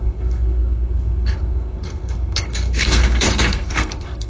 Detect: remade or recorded remade